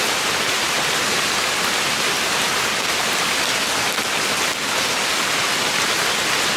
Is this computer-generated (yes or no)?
no